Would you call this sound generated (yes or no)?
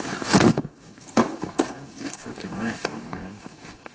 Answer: yes